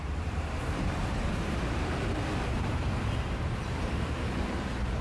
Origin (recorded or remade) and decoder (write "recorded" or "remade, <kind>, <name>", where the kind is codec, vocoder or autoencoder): remade, vocoder, BigVGAN v2